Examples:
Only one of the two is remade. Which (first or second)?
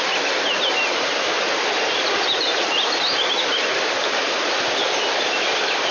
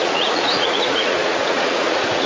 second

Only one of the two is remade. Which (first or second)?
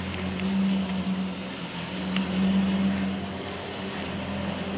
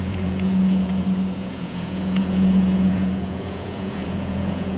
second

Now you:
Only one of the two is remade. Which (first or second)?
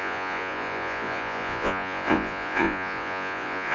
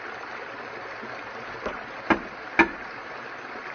first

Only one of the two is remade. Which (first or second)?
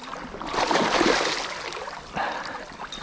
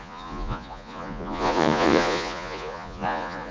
second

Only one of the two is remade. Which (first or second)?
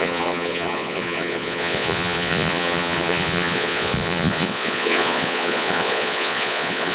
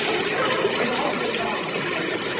first